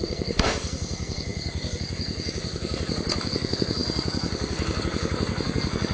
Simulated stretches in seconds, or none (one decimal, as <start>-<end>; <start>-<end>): 0.0-5.9